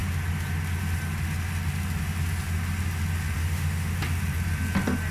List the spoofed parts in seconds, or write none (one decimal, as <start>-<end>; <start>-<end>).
3.4-4.0